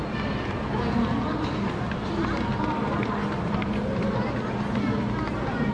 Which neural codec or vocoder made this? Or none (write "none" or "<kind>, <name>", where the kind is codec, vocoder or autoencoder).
none